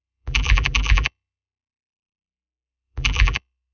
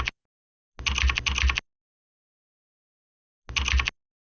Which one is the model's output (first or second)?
first